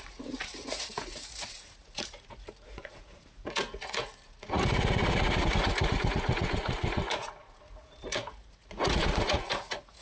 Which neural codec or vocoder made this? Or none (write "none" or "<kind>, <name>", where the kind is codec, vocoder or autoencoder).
vocoder, Vocos